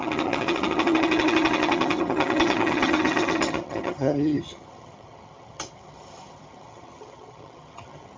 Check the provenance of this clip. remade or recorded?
remade